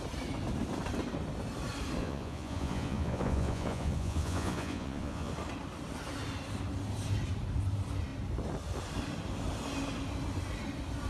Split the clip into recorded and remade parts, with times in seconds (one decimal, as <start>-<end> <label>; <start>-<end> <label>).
0.0-2.0 recorded; 2.0-5.3 remade; 5.3-11.1 recorded